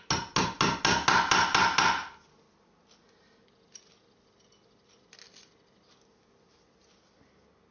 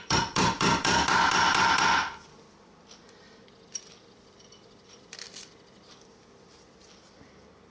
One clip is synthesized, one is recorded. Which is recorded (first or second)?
first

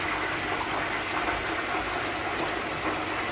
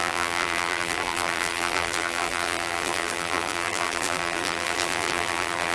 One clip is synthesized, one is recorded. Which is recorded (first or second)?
first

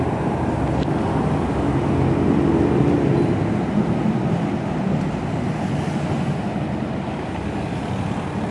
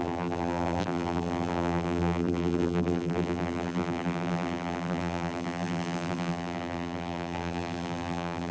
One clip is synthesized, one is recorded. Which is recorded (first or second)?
first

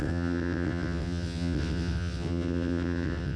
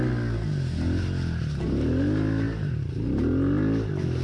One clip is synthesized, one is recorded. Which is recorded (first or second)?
second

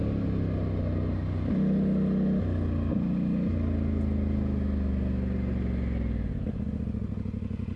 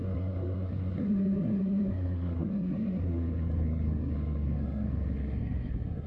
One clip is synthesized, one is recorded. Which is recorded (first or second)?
first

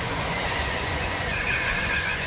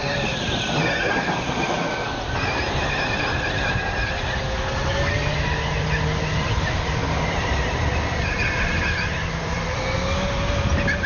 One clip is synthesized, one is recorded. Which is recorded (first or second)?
second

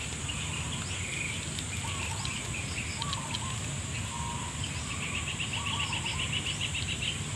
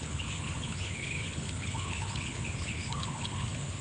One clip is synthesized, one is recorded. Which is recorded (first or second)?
first